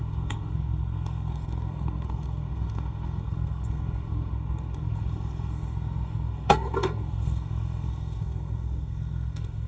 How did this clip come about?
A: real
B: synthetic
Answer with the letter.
B